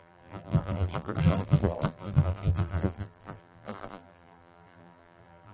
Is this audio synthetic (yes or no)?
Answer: yes